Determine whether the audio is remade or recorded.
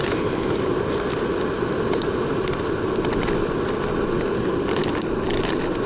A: recorded